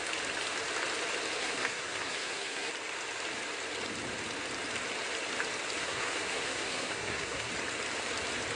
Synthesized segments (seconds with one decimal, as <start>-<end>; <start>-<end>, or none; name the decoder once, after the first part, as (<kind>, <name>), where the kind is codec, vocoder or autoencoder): 1.4-2.7 (codec, SNAC); 5.8-7.5

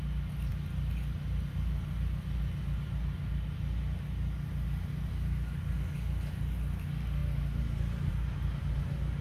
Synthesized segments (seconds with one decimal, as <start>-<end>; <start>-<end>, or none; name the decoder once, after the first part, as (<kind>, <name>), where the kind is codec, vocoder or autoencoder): none

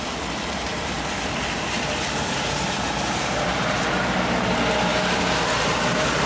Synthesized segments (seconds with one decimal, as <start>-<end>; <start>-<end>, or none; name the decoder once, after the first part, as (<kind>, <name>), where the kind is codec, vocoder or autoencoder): 0.7-4.5 (vocoder, BigVGAN v2)

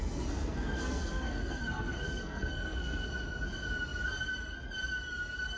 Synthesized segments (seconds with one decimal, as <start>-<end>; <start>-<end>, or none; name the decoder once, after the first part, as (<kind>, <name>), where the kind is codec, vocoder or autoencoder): 0.0-3.1 (codec, SNAC)

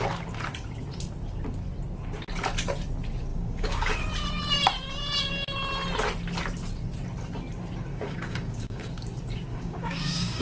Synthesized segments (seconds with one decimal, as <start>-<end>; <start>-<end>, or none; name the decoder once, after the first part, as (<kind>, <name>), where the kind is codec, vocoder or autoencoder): 3.3-3.9 (codec, DAC); 7.9-8.9; 9.5-10.4

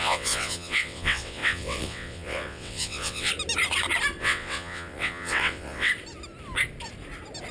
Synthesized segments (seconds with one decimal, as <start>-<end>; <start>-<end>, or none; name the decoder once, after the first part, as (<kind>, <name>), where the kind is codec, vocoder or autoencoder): 0.0-3.3 (vocoder, WaveNeXt); 4.2-5.9

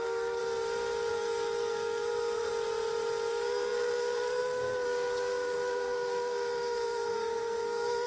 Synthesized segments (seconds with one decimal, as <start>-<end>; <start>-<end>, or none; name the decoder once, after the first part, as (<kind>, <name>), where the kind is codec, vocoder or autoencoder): 0.0-0.4 (codec, SNAC); 1.1-2.5; 3.3-8.1